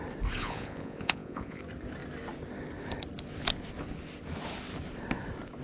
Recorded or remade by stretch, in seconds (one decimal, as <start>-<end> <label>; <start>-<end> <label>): 0.0-0.4 recorded; 0.4-1.6 remade; 1.6-5.6 recorded